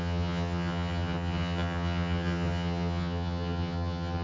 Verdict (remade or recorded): remade